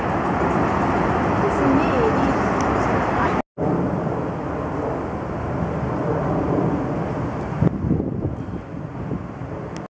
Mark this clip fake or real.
real